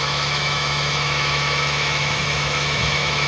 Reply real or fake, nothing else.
fake